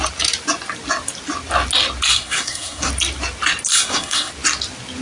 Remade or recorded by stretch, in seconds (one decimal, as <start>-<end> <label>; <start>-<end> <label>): 0.0-2.1 recorded; 2.1-2.9 remade; 2.9-3.7 recorded; 3.7-4.3 remade; 4.3-5.0 recorded

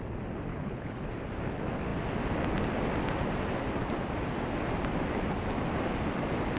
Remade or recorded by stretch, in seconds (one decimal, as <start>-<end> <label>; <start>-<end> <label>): 0.0-0.5 recorded; 0.5-1.1 remade; 1.1-6.6 recorded

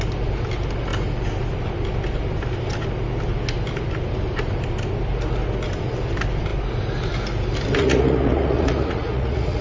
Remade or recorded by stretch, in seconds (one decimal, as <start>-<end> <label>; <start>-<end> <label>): 0.0-7.8 recorded; 7.8-9.6 remade

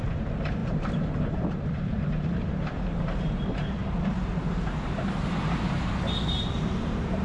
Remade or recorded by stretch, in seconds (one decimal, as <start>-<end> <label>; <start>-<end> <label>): 0.0-7.2 remade

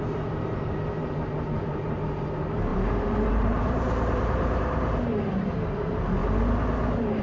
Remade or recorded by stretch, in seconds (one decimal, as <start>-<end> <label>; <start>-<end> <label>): 0.0-6.2 remade; 6.2-7.2 recorded

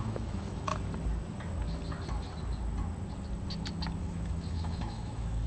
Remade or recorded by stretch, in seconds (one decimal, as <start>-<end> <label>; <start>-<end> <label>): 0.0-0.7 remade; 0.7-4.0 recorded; 4.0-5.5 remade

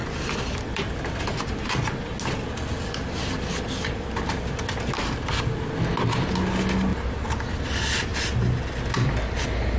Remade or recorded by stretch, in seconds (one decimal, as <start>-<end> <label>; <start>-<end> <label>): 0.0-1.2 remade; 1.2-9.8 recorded

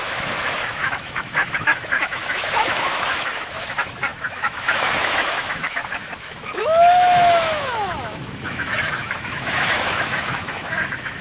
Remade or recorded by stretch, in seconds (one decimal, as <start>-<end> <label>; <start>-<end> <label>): 0.0-11.2 remade